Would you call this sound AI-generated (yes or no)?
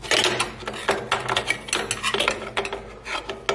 no